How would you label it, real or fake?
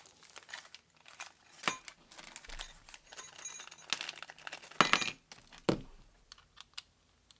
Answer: real